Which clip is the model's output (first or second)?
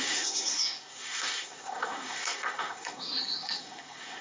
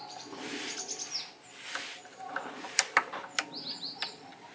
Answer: first